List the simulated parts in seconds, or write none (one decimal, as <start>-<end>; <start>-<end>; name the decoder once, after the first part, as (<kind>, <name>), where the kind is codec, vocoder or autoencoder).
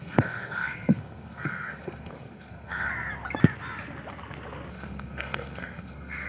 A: 0.0-2.9 (codec, SNAC); 4.7-6.3